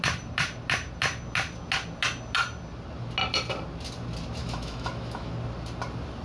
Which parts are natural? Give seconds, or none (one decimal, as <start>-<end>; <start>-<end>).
0.0-4.4; 5.3-6.2